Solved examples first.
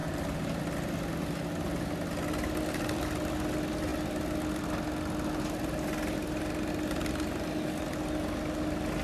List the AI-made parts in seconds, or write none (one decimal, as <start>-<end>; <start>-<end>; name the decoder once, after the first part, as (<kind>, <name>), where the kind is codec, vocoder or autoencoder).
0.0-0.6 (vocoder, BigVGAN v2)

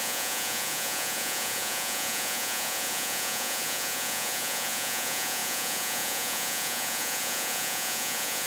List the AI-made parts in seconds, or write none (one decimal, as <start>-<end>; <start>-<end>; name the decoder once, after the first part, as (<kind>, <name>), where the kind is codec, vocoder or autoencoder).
0.0-8.5 (vocoder, Vocos)

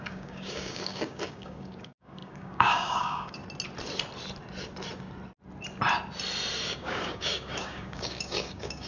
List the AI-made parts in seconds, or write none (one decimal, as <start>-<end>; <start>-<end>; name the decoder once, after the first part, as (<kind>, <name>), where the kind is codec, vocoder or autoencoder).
0.0-3.4 (codec, DAC); 6.7-8.9

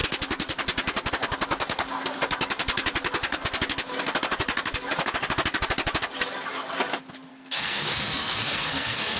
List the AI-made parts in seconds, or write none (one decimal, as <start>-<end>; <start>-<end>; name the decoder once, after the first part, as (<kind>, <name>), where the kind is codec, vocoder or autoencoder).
7.3-9.2 (codec, SNAC)

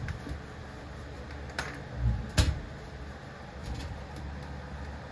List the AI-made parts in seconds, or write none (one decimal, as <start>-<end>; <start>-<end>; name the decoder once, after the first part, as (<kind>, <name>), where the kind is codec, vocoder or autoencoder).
none

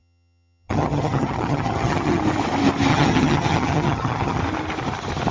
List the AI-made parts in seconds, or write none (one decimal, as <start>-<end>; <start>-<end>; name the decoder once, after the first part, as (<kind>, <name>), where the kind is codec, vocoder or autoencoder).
0.0-2.2 (vocoder, HiFi-GAN); 2.9-4.4

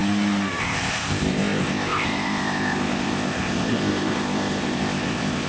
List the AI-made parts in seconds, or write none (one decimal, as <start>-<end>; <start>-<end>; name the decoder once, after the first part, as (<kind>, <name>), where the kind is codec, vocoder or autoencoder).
0.6-5.5 (codec, ZipCodec)

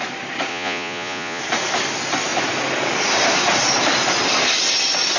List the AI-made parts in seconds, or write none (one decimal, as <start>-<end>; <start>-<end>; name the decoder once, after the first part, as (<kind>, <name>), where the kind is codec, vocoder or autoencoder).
0.5-1.4 (vocoder, Vocos)